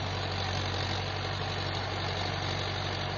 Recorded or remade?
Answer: recorded